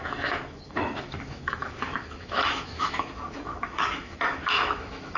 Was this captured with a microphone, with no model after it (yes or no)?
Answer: no